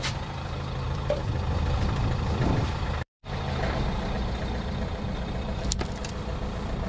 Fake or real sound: fake